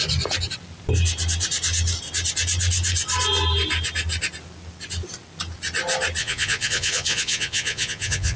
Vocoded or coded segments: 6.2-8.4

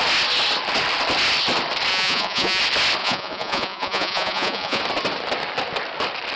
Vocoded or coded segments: 1.9-2.6; 3.0-4.8

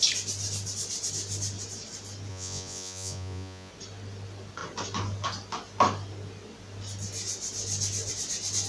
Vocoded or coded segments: 2.3-3.7

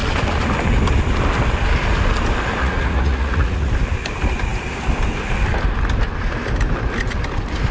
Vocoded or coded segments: 2.6-3.7

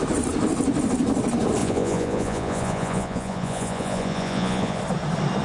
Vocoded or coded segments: 1.6-4.8

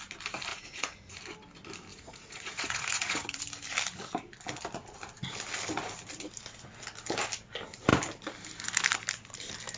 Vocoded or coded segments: 0.5-1.2; 1.9-3.4